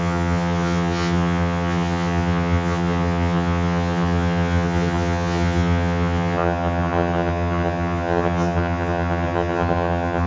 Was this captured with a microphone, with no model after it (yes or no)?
no